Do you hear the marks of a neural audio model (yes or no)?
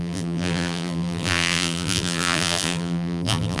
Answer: yes